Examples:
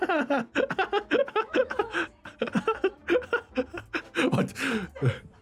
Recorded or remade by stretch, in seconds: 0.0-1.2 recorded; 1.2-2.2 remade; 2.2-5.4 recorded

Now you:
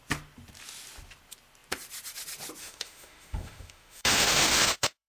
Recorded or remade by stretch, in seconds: 0.0-2.6 recorded; 2.6-5.1 remade

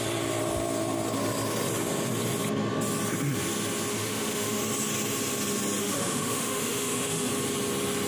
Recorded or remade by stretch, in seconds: 0.0-3.9 recorded; 3.9-4.6 remade; 4.6-5.8 recorded; 5.8-7.3 remade; 7.3-8.1 recorded

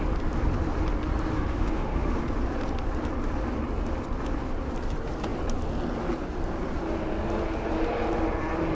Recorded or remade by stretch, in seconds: 0.0-1.3 recorded; 1.3-2.2 remade; 2.2-8.7 recorded